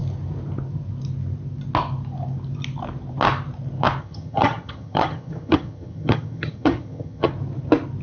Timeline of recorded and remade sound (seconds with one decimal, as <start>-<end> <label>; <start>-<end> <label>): 0.0-4.0 recorded; 4.0-7.3 remade; 7.3-8.0 recorded